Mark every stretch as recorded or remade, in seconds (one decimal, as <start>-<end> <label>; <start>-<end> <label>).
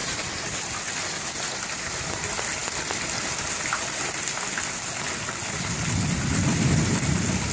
0.0-2.6 remade; 2.6-3.7 recorded; 3.7-7.5 remade